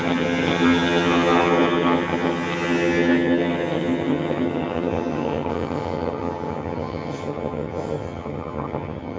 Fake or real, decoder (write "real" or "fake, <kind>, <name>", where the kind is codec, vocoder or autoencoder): fake, vocoder, HiFi-GAN